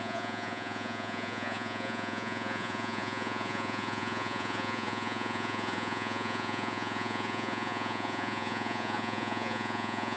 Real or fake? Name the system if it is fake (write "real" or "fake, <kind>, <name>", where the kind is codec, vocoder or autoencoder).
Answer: fake, vocoder, Vocos